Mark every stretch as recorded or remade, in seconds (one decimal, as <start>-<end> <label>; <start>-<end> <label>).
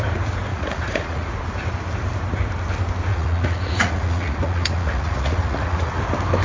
0.0-0.5 recorded; 0.5-1.3 remade; 1.3-3.1 recorded; 3.1-6.0 remade; 6.0-6.4 recorded